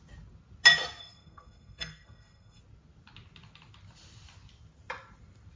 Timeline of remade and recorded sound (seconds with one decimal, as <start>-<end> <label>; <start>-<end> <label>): 0.0-1.0 recorded; 1.0-2.6 remade; 2.6-5.6 recorded